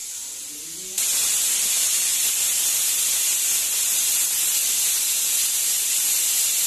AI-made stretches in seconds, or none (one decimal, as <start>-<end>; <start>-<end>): none